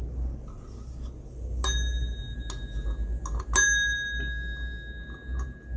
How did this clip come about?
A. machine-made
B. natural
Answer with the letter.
B